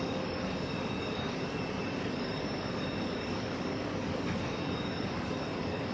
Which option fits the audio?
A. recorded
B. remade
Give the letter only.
B